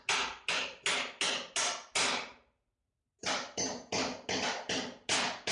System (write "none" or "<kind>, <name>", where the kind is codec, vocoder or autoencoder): none